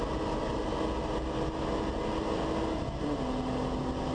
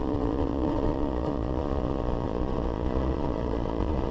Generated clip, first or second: second